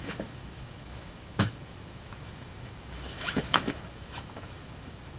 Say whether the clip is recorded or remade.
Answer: remade